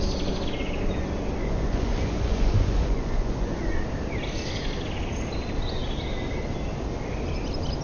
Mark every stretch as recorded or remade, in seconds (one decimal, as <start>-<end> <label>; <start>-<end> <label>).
0.0-1.4 recorded; 1.4-3.7 remade; 3.7-7.8 recorded